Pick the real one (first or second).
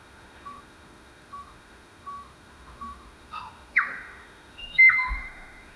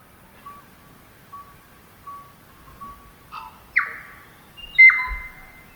second